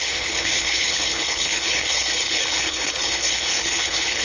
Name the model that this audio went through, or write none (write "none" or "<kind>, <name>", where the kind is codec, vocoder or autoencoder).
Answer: codec, HILCodec